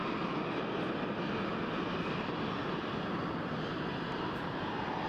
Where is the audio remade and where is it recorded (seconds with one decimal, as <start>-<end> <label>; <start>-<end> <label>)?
0.0-3.1 recorded; 3.1-5.1 remade